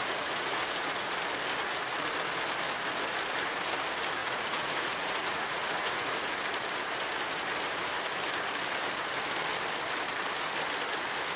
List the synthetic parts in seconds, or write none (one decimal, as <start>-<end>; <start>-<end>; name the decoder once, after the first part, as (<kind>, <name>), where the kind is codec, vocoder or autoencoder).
0.0-1.1 (vocoder, Vocos); 4.2-6.3